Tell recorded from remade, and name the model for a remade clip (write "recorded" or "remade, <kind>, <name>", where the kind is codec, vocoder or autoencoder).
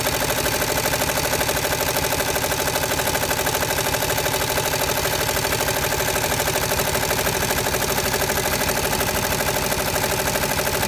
recorded